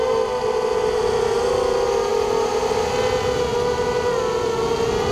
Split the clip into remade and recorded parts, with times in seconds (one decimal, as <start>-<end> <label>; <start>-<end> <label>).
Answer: 0.0-2.1 recorded; 2.1-2.9 remade; 2.9-5.1 recorded